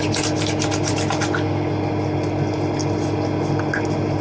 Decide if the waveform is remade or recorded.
recorded